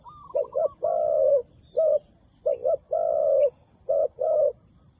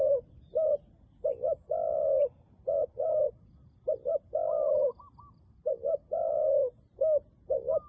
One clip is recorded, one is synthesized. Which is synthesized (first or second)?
first